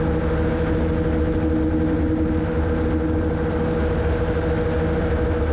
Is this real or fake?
real